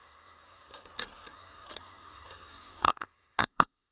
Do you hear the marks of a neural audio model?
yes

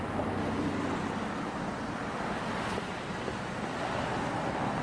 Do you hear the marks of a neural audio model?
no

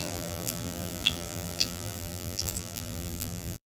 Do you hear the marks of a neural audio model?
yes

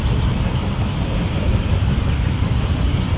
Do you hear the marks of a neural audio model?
no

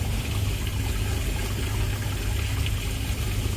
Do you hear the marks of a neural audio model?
no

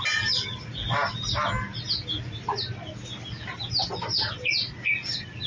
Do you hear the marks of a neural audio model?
no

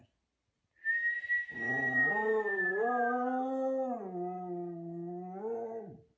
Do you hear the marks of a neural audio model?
no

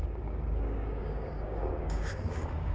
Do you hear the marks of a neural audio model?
yes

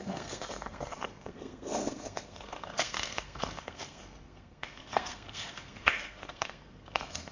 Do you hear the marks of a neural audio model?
yes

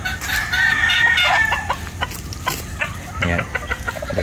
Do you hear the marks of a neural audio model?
no